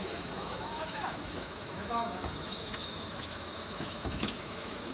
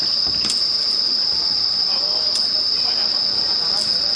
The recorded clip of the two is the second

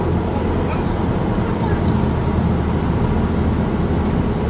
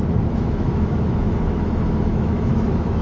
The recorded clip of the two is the first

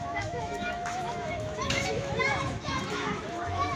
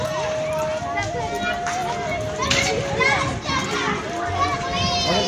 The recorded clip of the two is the second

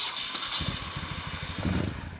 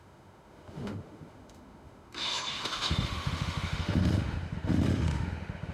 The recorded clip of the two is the first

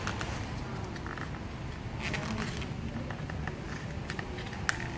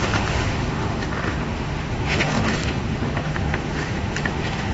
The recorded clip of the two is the first